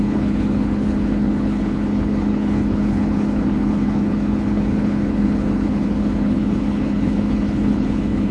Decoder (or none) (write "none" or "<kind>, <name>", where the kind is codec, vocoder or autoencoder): codec, HILCodec